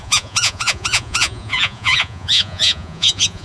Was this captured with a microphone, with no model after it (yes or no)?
no